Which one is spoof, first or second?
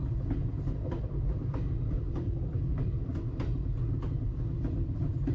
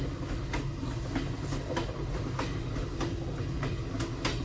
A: first